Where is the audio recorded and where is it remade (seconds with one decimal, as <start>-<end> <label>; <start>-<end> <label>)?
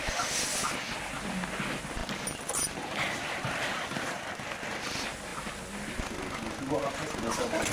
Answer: 0.0-7.7 recorded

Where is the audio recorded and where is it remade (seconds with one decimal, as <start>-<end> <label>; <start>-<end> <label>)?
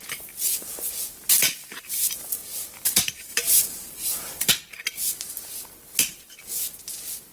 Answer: 0.0-3.3 recorded; 3.3-4.5 remade; 4.5-7.3 recorded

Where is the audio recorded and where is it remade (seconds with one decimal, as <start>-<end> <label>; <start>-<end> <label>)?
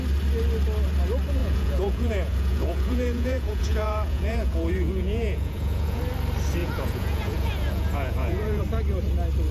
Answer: 0.0-1.4 recorded; 1.4-6.0 remade; 6.0-6.6 recorded; 6.6-8.6 remade; 8.6-9.5 recorded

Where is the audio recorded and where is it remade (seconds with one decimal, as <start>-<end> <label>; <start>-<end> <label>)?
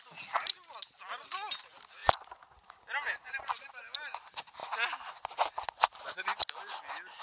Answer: 0.0-7.2 recorded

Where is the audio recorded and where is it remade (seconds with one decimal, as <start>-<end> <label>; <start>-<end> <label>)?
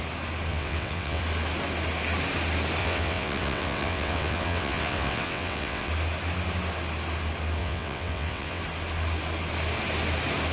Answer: 0.0-0.5 recorded; 0.5-1.2 remade; 1.2-2.8 recorded; 2.8-5.9 remade; 5.9-7.6 recorded; 7.6-8.6 remade; 8.6-10.5 recorded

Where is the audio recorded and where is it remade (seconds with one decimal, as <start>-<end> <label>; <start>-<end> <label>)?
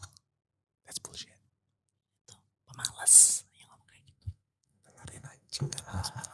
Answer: 0.0-3.8 recorded; 3.8-6.3 remade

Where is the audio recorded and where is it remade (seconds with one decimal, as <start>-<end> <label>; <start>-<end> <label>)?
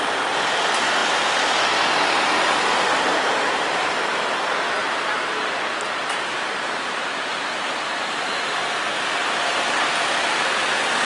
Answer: 0.0-1.0 recorded; 1.0-1.6 remade; 1.6-3.1 recorded; 3.1-3.8 remade; 3.8-4.8 recorded; 4.8-9.9 remade; 9.9-11.0 recorded